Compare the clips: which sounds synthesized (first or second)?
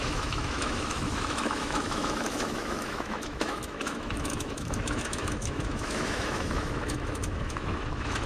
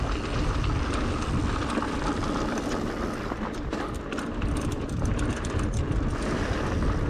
first